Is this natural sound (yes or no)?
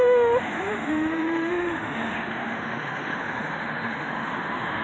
no